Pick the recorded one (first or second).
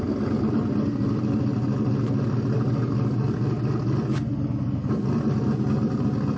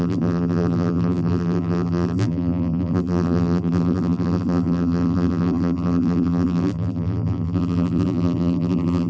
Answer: first